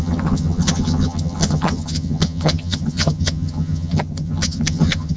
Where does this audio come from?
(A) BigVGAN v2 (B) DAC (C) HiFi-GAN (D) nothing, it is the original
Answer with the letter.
C